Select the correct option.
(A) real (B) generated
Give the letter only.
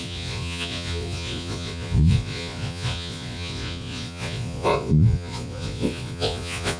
B